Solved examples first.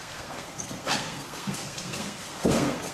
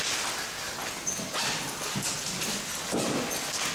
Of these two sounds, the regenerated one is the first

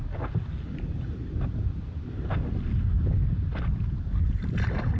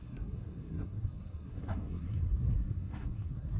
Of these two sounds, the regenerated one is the second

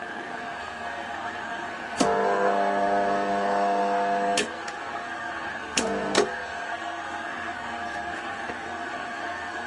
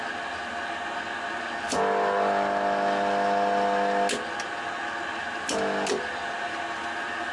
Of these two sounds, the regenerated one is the first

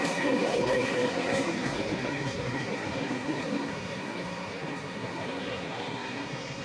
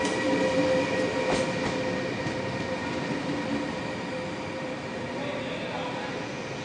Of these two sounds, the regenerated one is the first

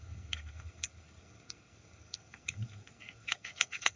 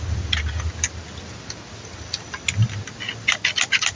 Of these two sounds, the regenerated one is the first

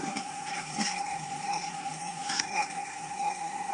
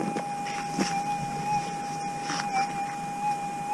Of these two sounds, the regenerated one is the first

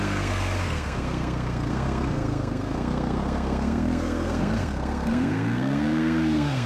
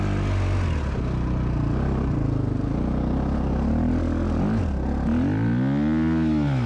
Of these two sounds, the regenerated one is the first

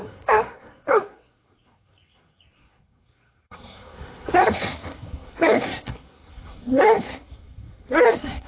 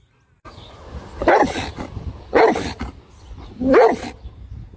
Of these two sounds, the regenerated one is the first